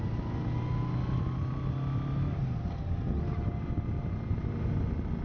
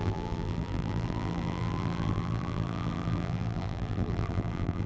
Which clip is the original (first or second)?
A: first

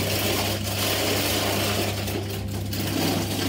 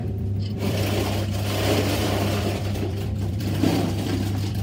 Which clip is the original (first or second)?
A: first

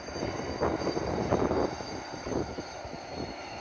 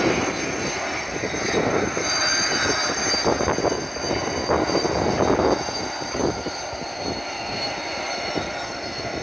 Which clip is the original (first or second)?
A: second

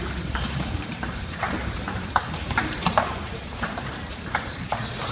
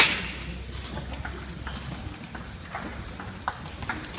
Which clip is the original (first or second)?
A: second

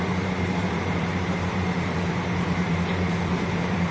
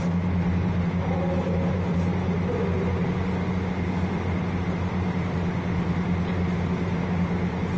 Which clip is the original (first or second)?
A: second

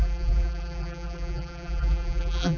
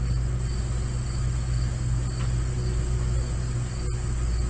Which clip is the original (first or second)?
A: second